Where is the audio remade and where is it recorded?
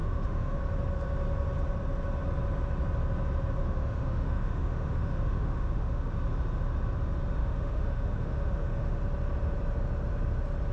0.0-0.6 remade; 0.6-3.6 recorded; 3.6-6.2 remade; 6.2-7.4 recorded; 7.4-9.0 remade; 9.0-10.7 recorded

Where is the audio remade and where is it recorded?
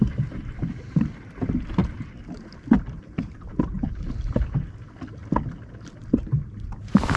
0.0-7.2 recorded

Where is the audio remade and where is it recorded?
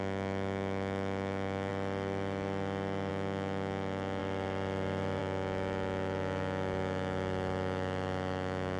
0.0-1.7 remade; 1.7-3.1 recorded; 3.1-4.2 remade; 4.2-5.2 recorded; 5.2-8.8 remade